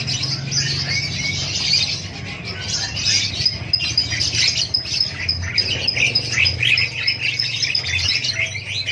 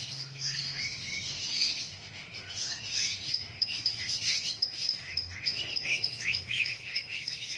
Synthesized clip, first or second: second